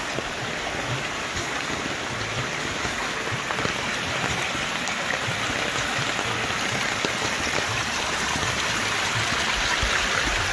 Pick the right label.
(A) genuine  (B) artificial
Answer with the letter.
A